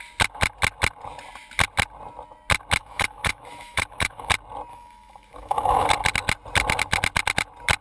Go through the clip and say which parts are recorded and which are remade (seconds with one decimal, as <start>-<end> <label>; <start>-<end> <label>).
0.0-2.8 recorded; 2.8-4.3 remade; 4.3-4.7 recorded; 4.7-5.9 remade; 5.9-7.8 recorded

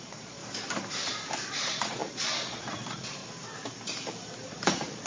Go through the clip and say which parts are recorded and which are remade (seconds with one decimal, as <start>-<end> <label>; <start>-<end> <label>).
0.0-0.4 remade; 0.4-1.5 recorded; 1.5-3.2 remade; 3.2-4.5 recorded; 4.5-5.1 remade

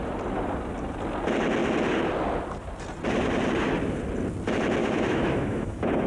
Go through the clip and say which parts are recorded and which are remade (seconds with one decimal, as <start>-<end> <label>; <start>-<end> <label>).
0.0-4.8 recorded; 4.8-6.1 remade

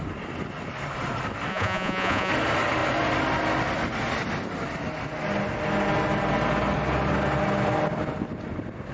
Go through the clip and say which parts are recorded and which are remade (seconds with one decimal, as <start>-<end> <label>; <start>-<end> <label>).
0.0-1.5 recorded; 1.5-2.3 remade; 2.3-8.9 recorded

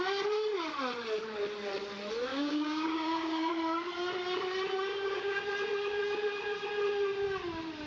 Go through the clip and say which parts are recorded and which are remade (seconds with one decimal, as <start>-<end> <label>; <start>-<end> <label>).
0.0-2.3 recorded; 2.3-3.5 remade; 3.5-4.9 recorded; 4.9-5.4 remade; 5.4-7.9 recorded